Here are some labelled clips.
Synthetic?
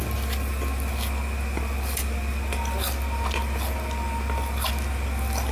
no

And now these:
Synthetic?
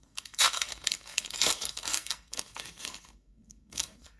yes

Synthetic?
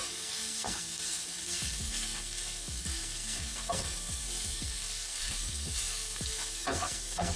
yes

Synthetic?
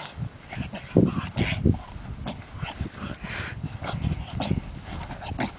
no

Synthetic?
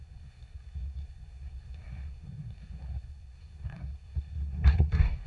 yes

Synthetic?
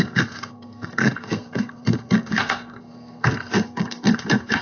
yes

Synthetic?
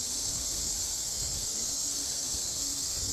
yes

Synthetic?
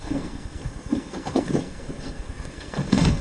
yes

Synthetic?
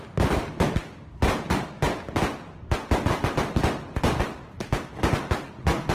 no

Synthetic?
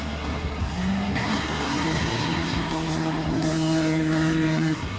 yes